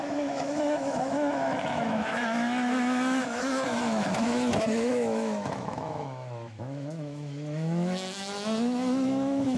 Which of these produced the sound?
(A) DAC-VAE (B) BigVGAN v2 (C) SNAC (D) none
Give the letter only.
A